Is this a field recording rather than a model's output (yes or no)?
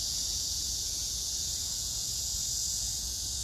no